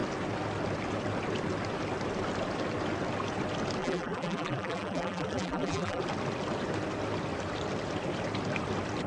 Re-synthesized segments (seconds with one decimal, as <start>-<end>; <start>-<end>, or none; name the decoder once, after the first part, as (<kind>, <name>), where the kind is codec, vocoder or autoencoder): 3.8-6.0 (vocoder, BigVGAN v2)